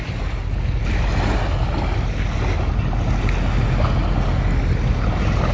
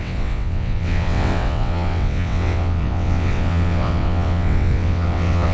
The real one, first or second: first